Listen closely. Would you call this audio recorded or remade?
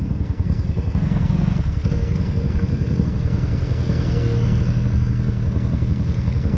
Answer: remade